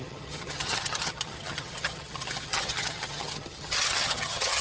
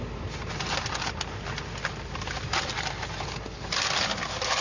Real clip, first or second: second